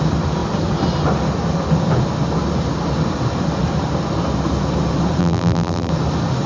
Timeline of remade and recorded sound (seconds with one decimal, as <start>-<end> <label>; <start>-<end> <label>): 0.0-5.2 recorded; 5.2-5.9 remade; 5.9-6.5 recorded